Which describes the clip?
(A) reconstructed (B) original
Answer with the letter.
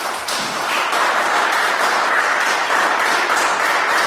B